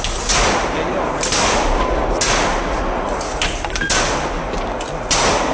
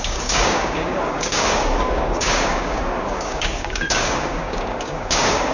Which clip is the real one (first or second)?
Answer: first